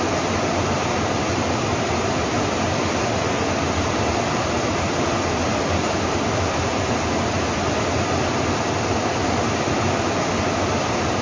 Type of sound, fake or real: real